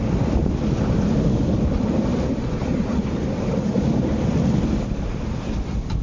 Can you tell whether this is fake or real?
real